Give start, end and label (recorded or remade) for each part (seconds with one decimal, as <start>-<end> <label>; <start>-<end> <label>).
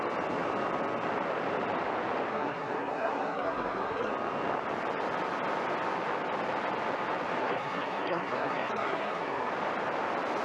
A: 0.0-2.3 recorded; 2.3-4.1 remade; 4.1-7.4 recorded; 7.4-9.5 remade; 9.5-10.4 recorded